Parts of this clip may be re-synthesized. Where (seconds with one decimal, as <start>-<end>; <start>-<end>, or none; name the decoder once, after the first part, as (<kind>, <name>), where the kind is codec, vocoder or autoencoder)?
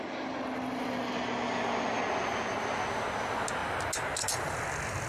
none